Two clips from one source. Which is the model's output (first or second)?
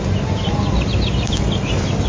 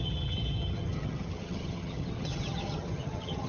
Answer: second